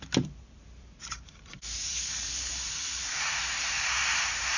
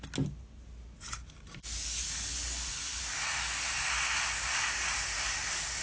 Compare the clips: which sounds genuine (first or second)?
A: second